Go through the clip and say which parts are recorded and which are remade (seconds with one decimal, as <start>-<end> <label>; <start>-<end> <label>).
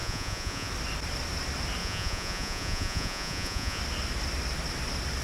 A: 0.0-0.7 remade; 0.7-1.8 recorded; 1.8-3.8 remade; 3.8-5.2 recorded